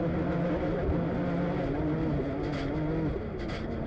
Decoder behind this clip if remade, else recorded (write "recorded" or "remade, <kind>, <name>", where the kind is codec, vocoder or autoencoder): recorded